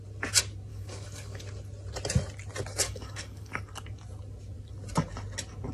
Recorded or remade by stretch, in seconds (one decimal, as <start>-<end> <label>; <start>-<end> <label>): 0.0-0.7 recorded; 0.7-1.4 remade; 1.4-2.7 recorded; 2.7-3.6 remade; 3.6-5.7 recorded